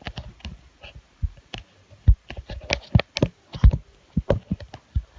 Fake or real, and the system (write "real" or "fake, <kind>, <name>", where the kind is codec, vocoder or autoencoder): real